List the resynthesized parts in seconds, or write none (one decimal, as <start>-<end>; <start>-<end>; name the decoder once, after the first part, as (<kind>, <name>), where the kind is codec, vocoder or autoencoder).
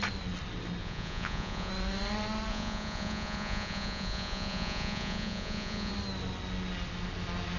0.8-1.7 (vocoder, Vocos); 2.5-5.9